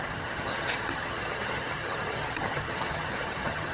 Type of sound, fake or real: fake